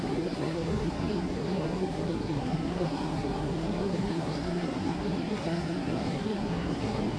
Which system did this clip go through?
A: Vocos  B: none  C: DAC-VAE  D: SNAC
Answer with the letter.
D